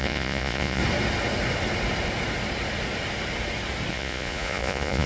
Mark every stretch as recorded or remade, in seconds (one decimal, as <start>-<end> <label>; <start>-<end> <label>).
0.0-0.8 remade; 0.8-3.9 recorded; 3.9-5.1 remade